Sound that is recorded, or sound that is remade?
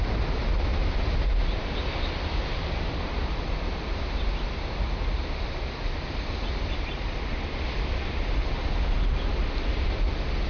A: recorded